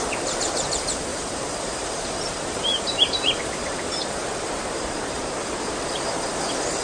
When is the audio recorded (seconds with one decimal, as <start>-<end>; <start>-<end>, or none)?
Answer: 0.0-1.1; 5.2-6.8